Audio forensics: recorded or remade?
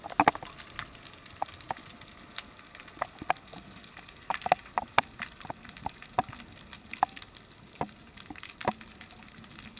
recorded